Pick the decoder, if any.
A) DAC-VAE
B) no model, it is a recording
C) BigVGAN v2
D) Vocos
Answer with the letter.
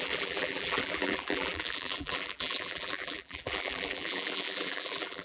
C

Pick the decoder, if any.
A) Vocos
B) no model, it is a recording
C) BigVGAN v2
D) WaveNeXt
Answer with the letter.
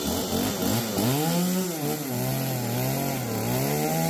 B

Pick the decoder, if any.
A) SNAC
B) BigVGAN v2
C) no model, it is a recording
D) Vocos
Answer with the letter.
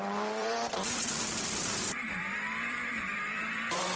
B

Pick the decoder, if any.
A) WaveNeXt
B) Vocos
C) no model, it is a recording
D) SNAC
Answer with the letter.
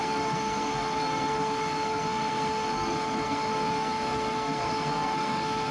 D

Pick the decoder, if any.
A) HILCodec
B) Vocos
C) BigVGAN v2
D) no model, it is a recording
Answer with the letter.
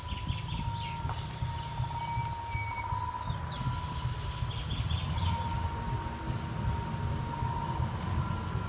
D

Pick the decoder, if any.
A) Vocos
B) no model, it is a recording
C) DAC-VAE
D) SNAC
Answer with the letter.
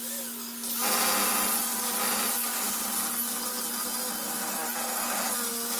B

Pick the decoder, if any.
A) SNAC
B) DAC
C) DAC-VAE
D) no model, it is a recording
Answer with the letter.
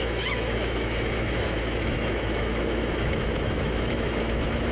C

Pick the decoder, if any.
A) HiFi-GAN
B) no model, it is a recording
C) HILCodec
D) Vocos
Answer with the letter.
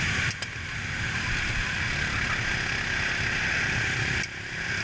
B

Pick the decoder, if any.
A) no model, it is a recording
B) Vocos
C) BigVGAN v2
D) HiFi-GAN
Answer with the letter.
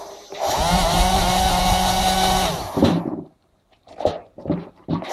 C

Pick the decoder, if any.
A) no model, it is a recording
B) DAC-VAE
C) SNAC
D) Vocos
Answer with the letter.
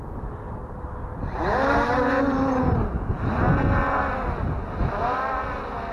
A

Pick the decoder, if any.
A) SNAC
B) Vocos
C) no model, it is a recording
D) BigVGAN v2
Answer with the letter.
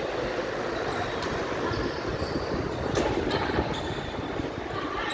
C